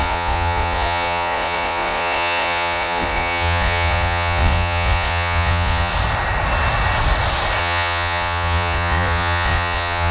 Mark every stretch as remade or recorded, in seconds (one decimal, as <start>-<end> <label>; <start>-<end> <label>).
0.0-5.9 remade; 5.9-7.6 recorded; 7.6-10.1 remade